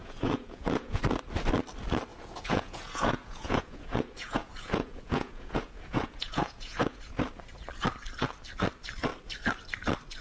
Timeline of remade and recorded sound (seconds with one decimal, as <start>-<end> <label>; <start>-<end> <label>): 0.0-1.0 remade; 1.0-2.1 recorded; 2.1-7.0 remade; 7.0-10.2 recorded